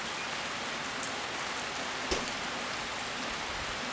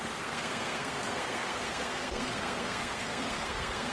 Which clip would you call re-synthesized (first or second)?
second